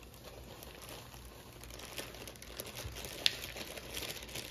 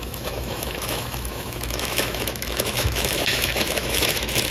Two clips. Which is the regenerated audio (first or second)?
second